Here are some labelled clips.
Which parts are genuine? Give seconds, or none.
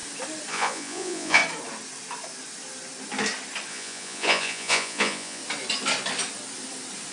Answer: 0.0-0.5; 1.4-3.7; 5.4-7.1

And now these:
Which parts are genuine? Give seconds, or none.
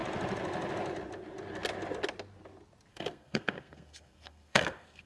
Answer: 0.0-2.9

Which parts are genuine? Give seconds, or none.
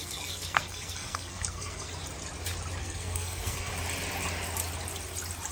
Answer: 1.9-2.8; 3.7-5.5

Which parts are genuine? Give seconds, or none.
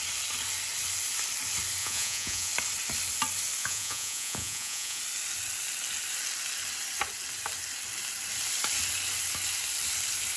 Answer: 0.0-1.8; 2.5-3.6; 5.0-10.4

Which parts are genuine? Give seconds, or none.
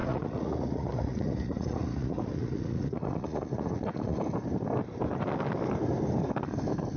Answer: 4.2-7.0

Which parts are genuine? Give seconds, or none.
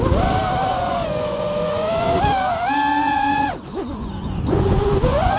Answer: 0.0-0.7; 2.2-3.0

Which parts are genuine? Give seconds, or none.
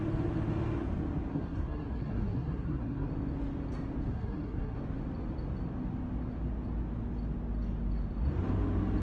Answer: 0.0-1.3; 3.1-4.1; 4.8-9.0